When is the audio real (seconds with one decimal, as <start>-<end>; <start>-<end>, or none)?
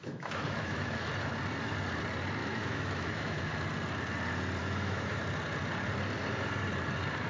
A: 0.9-2.4; 3.5-4.6; 5.2-7.3